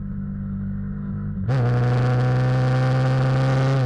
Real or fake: real